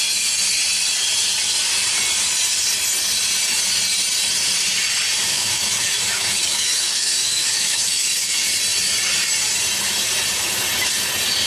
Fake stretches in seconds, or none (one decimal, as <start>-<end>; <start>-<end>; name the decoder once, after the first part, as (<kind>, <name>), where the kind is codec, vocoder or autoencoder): 5.3-8.5 (autoencoder, DAC-VAE)